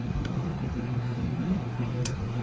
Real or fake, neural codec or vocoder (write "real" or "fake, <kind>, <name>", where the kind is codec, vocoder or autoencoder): fake, codec, SNAC